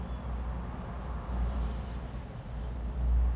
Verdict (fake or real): real